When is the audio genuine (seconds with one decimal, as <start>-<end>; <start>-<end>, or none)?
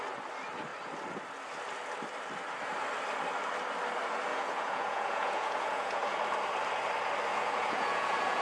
0.0-4.3; 6.2-7.3